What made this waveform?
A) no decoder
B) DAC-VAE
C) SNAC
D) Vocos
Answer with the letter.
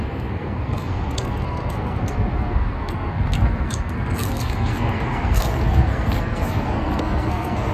C